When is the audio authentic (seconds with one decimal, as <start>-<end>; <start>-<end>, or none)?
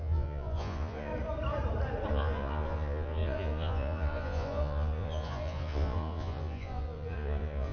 1.1-2.1